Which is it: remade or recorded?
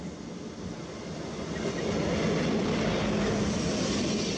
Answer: recorded